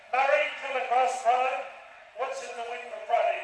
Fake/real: fake